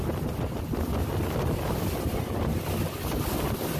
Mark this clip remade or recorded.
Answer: recorded